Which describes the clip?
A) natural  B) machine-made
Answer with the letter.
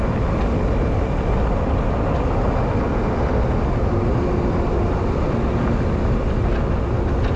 A